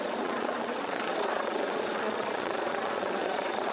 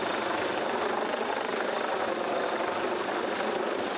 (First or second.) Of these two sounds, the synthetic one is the first